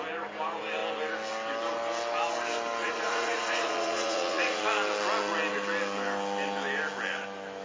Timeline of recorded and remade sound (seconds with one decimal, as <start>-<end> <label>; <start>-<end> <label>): 0.0-2.8 recorded; 2.8-4.6 remade; 4.6-7.6 recorded